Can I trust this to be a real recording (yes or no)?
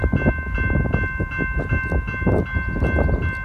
yes